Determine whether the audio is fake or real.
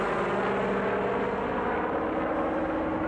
real